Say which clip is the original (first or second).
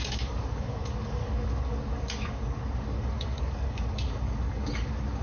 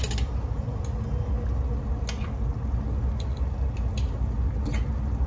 second